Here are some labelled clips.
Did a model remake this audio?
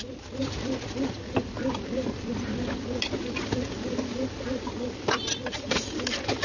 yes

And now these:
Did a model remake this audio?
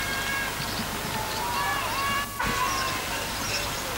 yes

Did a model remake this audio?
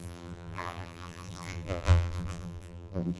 yes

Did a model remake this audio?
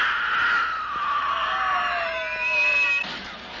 no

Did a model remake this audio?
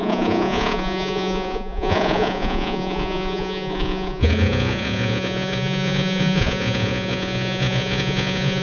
yes